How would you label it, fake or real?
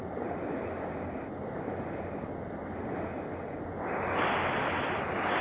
real